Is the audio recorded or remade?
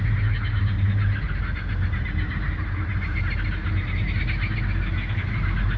recorded